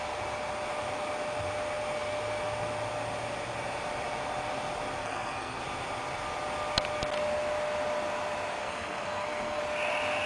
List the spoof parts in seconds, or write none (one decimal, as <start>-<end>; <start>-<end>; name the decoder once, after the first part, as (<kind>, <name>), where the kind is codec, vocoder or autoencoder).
5.0-5.6 (codec, SNAC); 8.6-9.6